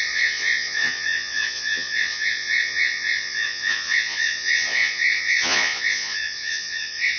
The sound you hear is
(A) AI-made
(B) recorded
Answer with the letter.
A